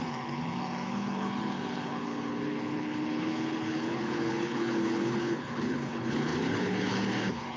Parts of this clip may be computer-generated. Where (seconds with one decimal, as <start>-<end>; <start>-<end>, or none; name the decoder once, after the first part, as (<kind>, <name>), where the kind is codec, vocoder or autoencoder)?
0.0-7.6 (codec, HILCodec)